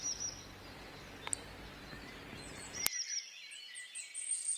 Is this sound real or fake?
real